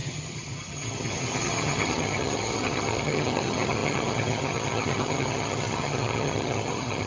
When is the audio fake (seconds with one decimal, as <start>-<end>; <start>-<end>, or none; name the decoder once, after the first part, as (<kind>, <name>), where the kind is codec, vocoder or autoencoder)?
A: 0.0-7.1 (vocoder, HiFi-GAN)